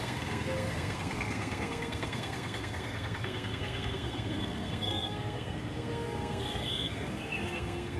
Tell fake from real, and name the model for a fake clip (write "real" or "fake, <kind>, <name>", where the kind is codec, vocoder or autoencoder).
fake, codec, SNAC